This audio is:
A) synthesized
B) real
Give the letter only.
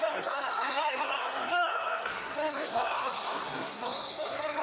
A